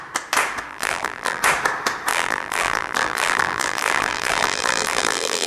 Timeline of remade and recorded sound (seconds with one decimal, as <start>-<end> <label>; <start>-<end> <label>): 0.0-0.7 recorded; 0.7-1.4 remade; 1.4-2.1 recorded; 2.1-5.5 remade